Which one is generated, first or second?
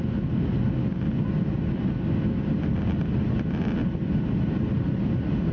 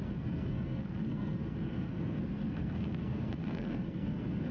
second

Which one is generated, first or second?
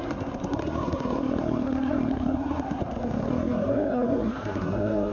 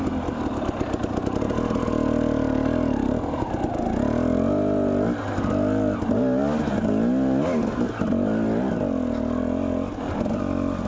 first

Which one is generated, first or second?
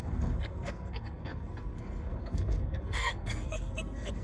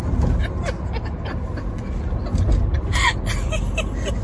first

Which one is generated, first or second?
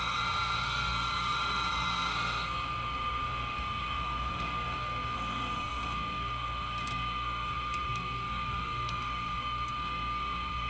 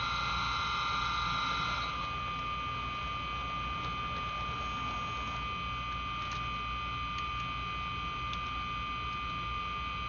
first